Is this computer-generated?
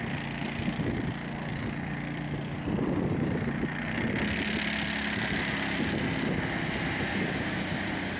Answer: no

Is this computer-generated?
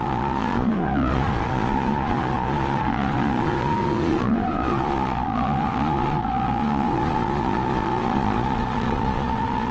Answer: yes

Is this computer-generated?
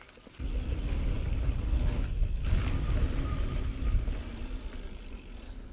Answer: no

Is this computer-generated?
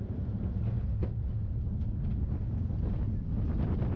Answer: no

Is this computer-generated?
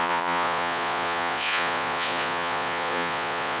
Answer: yes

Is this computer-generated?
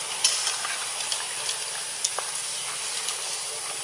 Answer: no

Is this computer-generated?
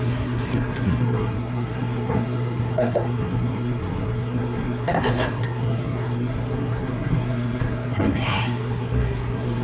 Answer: yes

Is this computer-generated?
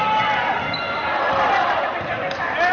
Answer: no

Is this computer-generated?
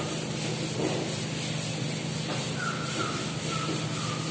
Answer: no